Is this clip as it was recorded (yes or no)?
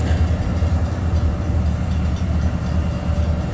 yes